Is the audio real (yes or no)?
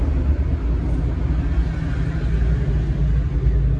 yes